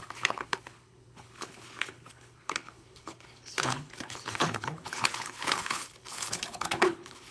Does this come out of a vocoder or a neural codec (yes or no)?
yes